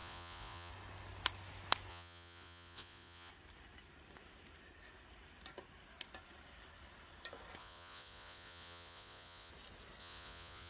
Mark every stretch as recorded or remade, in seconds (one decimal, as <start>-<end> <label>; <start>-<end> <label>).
0.0-0.7 remade; 0.7-1.9 recorded; 1.9-3.3 remade; 3.3-7.6 recorded; 7.6-9.5 remade; 9.5-10.0 recorded; 10.0-10.7 remade